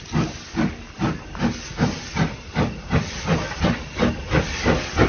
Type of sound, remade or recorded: recorded